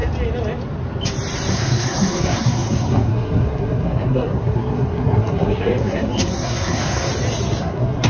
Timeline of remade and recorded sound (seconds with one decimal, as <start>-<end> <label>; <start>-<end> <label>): 0.0-1.5 recorded; 1.5-7.1 remade; 7.1-7.6 recorded; 7.6-8.1 remade